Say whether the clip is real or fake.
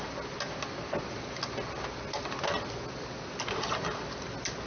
real